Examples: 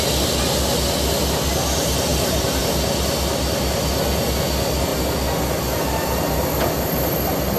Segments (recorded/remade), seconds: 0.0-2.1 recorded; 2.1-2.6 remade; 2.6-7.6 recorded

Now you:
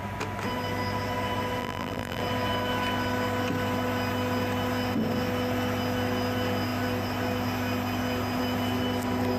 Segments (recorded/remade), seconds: 0.0-1.6 recorded; 1.6-2.2 remade; 2.2-9.4 recorded

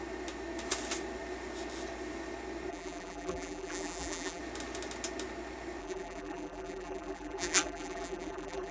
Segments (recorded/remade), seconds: 0.0-2.7 recorded; 2.7-4.4 remade; 4.4-5.8 recorded; 5.8-8.7 remade

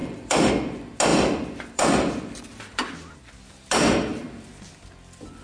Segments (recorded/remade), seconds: 0.0-0.5 remade; 0.5-1.1 recorded; 1.1-3.3 remade; 3.3-4.1 recorded; 4.1-4.7 remade; 4.7-5.4 recorded

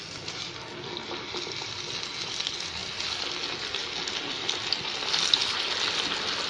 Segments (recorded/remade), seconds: 0.0-6.5 recorded